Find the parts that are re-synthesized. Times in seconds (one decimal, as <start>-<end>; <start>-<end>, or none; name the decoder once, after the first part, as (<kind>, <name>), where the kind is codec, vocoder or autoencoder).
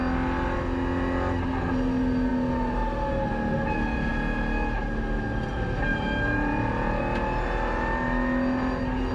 5.9-7.0 (vocoder, BigVGAN v2)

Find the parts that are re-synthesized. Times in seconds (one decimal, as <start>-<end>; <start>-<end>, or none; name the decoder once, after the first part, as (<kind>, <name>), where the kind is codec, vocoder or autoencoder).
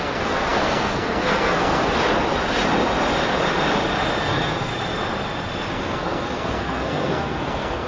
0.0-1.8 (codec, SNAC); 4.2-4.7; 5.7-7.9